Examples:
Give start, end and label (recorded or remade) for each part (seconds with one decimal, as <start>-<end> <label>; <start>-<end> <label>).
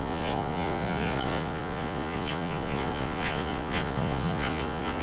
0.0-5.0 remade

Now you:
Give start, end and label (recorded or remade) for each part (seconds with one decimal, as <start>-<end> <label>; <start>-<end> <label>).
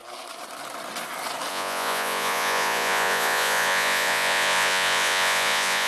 0.0-1.5 recorded; 1.5-5.9 remade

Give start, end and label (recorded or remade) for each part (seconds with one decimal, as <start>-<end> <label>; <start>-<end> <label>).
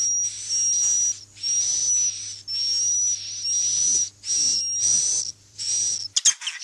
0.0-4.9 recorded; 4.9-5.7 remade; 5.7-6.6 recorded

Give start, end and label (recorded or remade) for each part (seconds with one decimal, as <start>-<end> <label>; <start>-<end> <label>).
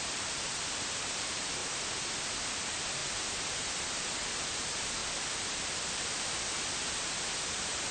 0.0-1.6 remade; 1.6-2.4 recorded; 2.4-3.0 remade; 3.0-4.5 recorded; 4.5-5.0 remade; 5.0-7.0 recorded; 7.0-7.9 remade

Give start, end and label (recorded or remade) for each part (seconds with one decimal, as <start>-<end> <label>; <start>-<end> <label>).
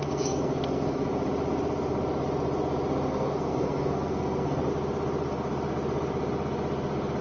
0.0-1.1 remade; 1.1-3.1 recorded; 3.1-4.6 remade; 4.6-7.2 recorded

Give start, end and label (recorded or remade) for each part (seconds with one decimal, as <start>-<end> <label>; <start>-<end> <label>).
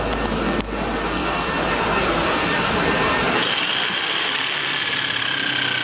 0.0-1.2 recorded; 1.2-4.7 remade; 4.7-5.8 recorded